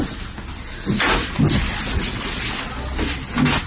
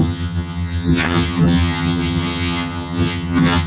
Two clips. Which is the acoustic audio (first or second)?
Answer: first